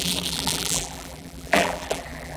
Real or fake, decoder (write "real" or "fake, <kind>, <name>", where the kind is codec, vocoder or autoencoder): fake, vocoder, BigVGAN v2